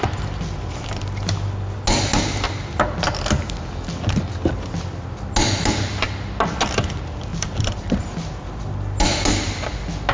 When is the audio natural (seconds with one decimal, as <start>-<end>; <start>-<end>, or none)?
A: 0.0-7.3; 8.0-10.1